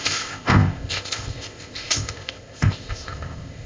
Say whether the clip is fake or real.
fake